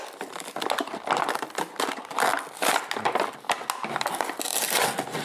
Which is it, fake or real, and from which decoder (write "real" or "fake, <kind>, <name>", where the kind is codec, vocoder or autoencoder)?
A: real